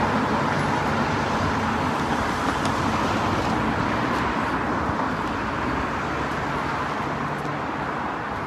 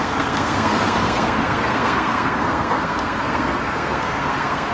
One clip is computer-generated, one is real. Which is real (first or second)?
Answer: first